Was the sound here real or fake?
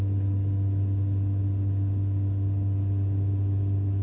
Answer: real